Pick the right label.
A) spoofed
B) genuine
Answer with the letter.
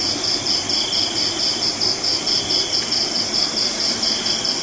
A